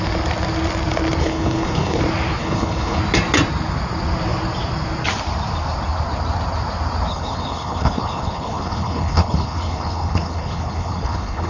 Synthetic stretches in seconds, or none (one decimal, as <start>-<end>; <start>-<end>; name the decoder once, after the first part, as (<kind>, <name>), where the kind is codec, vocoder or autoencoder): 1.2-2.0 (codec, HILCodec); 2.4-3.0; 7.1-11.5